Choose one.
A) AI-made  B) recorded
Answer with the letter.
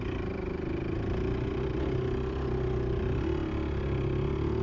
B